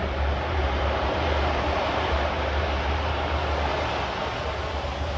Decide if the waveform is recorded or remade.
remade